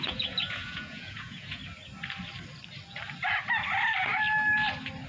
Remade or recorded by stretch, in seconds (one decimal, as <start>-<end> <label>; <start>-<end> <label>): 0.0-1.6 remade; 1.6-5.1 recorded